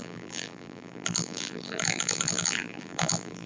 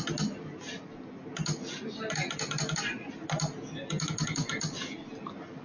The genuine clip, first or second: second